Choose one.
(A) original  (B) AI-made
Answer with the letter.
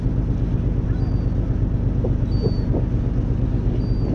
A